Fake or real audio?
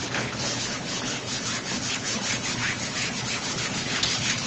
fake